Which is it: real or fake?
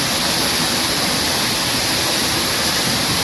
real